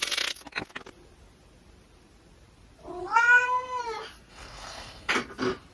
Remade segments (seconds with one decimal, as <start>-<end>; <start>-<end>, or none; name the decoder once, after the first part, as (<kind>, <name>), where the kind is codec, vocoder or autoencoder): 3.0-3.8 (codec, SNAC); 4.3-5.1

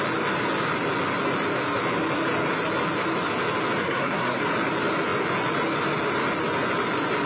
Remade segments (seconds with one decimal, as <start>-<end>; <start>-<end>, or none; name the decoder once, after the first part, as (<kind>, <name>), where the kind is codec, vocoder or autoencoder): 3.8-4.4 (codec, SNAC)

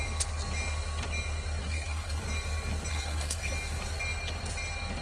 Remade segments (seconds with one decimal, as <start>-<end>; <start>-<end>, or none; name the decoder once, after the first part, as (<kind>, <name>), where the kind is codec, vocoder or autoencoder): 1.6-2.2 (codec, SNAC); 2.9-3.5

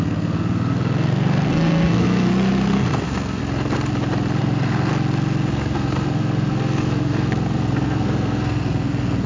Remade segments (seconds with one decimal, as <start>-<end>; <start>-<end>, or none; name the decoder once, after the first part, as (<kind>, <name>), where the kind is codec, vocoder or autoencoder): 0.0-3.4 (codec, SNAC); 4.4-4.9; 5.5-9.3

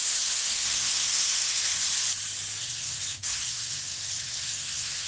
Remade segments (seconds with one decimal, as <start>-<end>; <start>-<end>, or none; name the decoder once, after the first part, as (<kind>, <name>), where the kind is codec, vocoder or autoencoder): 0.0-1.9 (codec, SNAC); 2.6-5.1

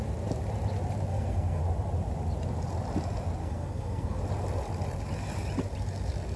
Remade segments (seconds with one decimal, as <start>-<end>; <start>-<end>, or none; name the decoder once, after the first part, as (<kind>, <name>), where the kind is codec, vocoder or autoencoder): 1.1-1.6 (codec, SNAC); 3.4-4.2

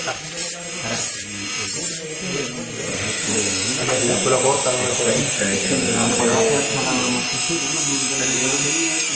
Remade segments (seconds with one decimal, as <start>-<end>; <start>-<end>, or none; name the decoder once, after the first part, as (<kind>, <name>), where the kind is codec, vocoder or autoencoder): 2.9-4.0 (codec, SNAC); 4.9-6.2

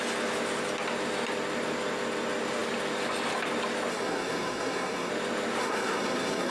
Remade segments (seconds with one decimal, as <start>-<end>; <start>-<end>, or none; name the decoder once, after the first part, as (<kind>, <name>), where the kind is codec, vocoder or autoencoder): 3.9-5.1 (codec, SNAC); 5.6-6.5